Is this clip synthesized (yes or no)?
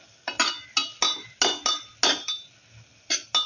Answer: no